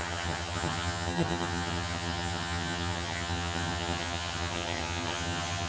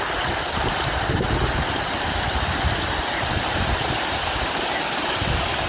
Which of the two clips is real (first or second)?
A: second